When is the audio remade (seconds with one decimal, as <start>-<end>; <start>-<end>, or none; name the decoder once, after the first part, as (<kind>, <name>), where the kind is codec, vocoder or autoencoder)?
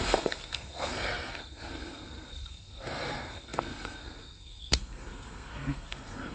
0.0-6.3 (codec, SNAC)